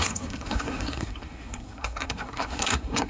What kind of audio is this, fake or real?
fake